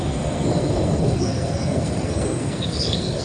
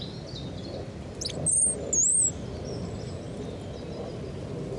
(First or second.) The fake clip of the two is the first